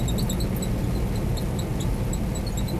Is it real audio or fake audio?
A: real